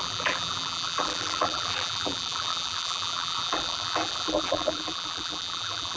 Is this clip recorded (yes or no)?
no